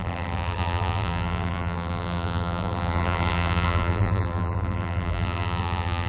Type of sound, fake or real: fake